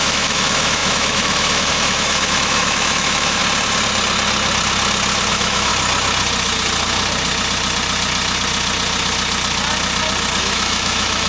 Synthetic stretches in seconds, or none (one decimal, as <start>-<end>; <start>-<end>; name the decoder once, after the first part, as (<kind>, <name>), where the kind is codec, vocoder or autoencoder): 0.0-3.4 (autoencoder, DAC-VAE); 5.3-5.7; 10.4-11.3